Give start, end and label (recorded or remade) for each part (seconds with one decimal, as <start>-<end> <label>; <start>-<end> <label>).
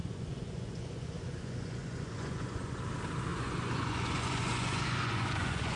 0.0-2.8 remade; 2.8-3.3 recorded; 3.3-5.8 remade